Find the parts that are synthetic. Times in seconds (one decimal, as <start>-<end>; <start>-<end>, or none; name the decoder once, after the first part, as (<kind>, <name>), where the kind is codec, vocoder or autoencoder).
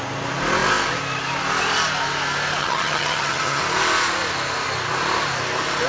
2.6-3.6 (vocoder, HiFi-GAN)